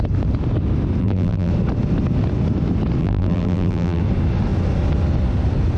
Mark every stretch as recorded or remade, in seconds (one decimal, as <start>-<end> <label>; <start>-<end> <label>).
0.0-1.0 recorded; 1.0-1.5 remade; 1.5-3.0 recorded; 3.0-4.0 remade; 4.0-5.8 recorded